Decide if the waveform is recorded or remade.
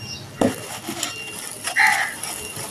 recorded